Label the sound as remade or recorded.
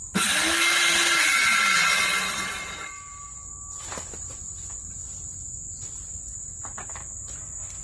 recorded